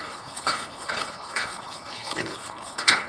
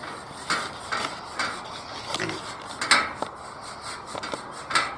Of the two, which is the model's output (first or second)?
first